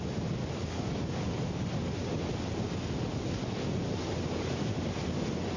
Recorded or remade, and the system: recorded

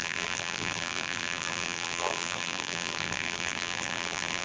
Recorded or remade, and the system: remade, vocoder, BigVGAN v2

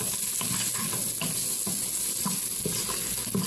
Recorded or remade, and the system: recorded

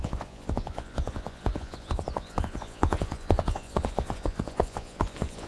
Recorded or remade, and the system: remade, vocoder, Vocos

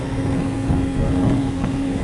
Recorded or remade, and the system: remade, codec, SNAC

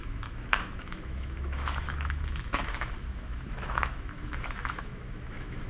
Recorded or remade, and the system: remade, autoencoder, DAC-VAE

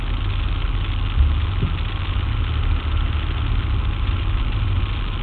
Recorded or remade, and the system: recorded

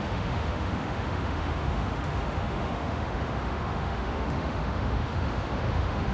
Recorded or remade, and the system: remade, autoencoder, DAC-VAE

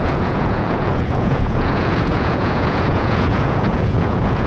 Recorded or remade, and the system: remade, vocoder, Vocos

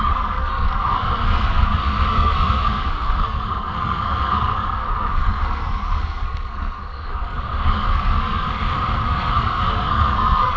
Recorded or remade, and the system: remade, codec, SNAC